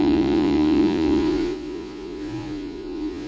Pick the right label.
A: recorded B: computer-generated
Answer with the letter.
B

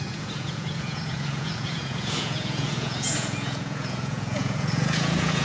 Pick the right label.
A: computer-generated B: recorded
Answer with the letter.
A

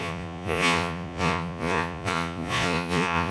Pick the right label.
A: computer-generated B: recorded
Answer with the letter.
A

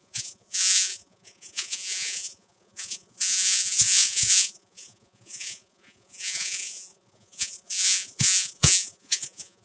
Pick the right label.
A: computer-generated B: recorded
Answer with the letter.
A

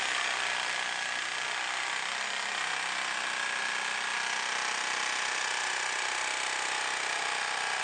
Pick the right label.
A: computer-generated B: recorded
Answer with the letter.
B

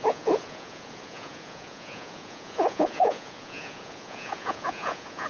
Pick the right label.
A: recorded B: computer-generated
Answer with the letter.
B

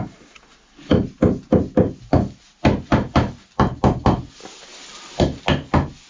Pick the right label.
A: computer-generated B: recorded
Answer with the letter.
B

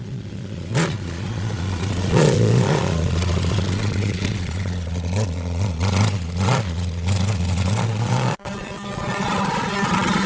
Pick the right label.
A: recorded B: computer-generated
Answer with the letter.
B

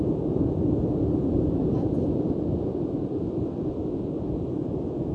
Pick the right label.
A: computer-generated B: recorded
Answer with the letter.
B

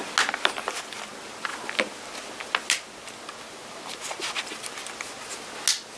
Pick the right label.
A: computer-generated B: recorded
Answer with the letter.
B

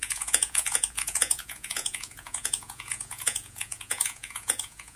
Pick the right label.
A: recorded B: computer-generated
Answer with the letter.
B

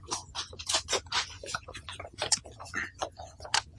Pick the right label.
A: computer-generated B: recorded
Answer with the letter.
A